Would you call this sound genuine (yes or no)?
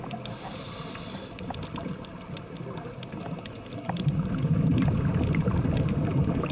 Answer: yes